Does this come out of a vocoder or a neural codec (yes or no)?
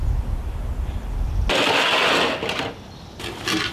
no